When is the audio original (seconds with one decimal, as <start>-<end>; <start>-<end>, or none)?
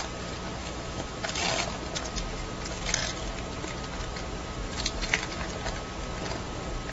0.0-0.6; 1.2-6.9